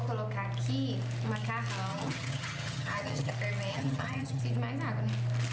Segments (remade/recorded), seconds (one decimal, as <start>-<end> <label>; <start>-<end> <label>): 0.0-1.9 recorded; 1.9-3.3 remade; 3.3-3.7 recorded; 3.7-4.4 remade; 4.4-5.5 recorded